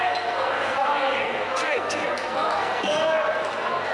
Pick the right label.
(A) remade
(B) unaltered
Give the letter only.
A